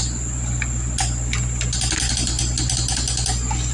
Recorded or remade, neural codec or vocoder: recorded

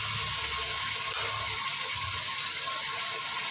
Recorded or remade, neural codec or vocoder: recorded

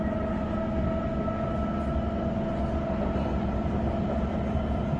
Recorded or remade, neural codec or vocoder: recorded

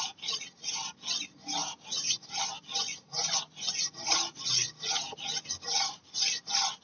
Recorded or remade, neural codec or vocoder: recorded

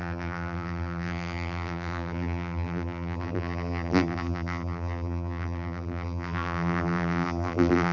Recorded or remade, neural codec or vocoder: remade, vocoder, BigVGAN v2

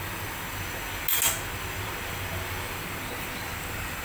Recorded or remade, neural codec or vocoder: recorded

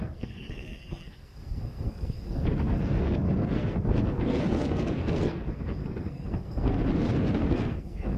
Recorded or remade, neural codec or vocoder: remade, codec, SNAC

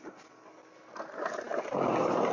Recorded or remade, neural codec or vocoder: recorded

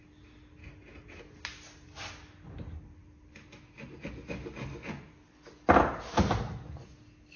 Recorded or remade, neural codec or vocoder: recorded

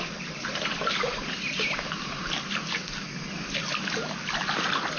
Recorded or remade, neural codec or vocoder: recorded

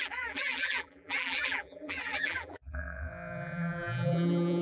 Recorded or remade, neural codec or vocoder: remade, vocoder, BigVGAN v2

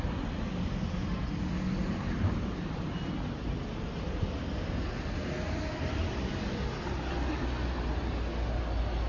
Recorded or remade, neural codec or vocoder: recorded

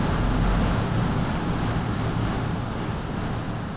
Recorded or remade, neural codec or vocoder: recorded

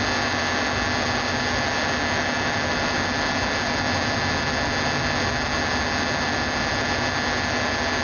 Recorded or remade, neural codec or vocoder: recorded